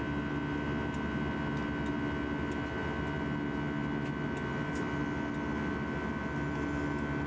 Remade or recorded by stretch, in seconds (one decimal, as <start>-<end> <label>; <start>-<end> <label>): 0.0-7.3 recorded

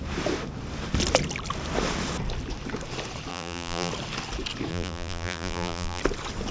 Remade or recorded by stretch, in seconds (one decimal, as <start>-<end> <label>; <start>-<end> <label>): 0.0-3.3 recorded; 3.3-3.9 remade; 3.9-4.7 recorded; 4.7-6.0 remade; 6.0-6.5 recorded

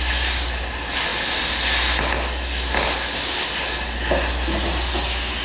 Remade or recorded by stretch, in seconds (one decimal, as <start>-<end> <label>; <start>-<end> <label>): 0.0-5.4 recorded

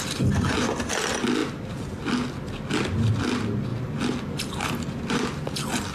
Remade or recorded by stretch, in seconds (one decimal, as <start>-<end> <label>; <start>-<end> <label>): 0.0-5.9 recorded

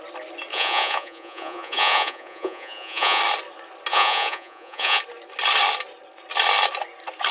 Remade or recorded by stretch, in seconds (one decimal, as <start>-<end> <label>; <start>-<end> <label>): 0.0-0.5 recorded; 0.5-3.2 remade; 3.2-3.9 recorded; 3.9-5.0 remade; 5.0-7.3 recorded

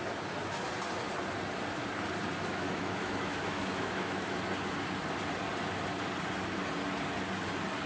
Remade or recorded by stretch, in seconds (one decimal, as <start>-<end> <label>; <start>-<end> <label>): 0.0-2.5 recorded; 2.5-4.4 remade; 4.4-7.9 recorded